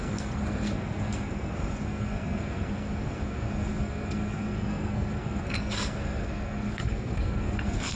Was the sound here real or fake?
fake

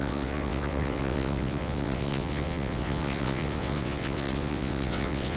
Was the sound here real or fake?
fake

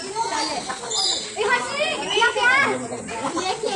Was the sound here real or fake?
real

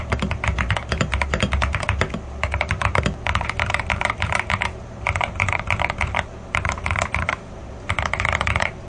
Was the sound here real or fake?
fake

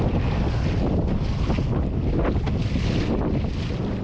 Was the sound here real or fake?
real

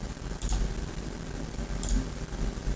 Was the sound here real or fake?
fake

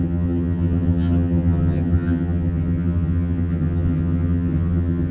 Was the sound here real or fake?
fake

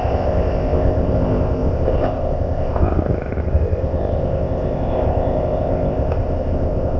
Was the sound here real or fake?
fake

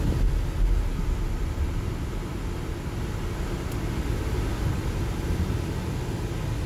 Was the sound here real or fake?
real